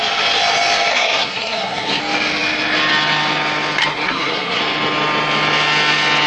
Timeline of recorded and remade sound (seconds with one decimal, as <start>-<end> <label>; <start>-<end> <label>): 0.0-0.9 recorded; 0.9-2.0 remade; 2.0-3.9 recorded; 3.9-4.6 remade; 4.6-6.3 recorded